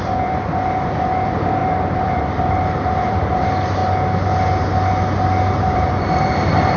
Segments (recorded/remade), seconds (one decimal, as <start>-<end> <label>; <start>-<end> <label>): 0.0-3.8 remade; 3.8-5.6 recorded; 5.6-6.8 remade